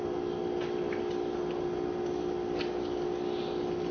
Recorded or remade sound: recorded